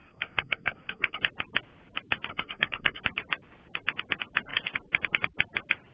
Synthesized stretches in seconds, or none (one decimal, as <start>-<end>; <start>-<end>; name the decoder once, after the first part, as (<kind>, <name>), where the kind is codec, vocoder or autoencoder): 0.0-1.2 (codec, SNAC); 2.3-3.0